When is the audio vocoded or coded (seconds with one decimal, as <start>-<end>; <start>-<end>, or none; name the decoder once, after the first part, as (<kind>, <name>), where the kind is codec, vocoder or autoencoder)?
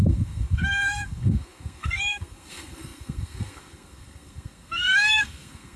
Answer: 0.0-5.8 (codec, SNAC)